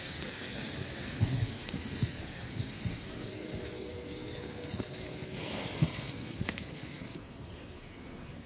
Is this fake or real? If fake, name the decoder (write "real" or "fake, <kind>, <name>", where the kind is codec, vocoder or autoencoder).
fake, codec, SNAC